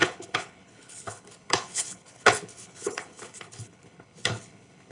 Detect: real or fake fake